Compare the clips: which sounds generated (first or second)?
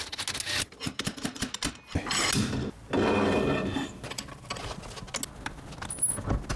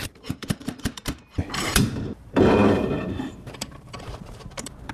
second